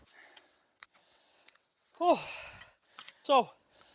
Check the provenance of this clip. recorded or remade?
remade